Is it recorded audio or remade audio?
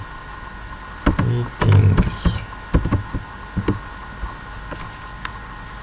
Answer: recorded